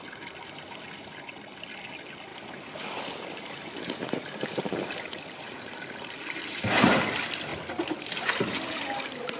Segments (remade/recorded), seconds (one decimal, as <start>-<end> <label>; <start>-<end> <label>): 0.0-9.4 recorded